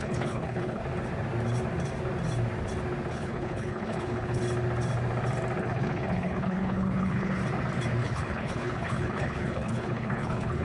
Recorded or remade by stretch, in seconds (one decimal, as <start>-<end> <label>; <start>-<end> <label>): 0.0-0.8 remade; 0.8-3.1 recorded; 3.1-4.4 remade; 4.4-5.6 recorded; 5.6-7.4 remade; 7.4-8.0 recorded; 8.0-10.6 remade